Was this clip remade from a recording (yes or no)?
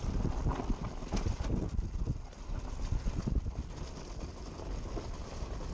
no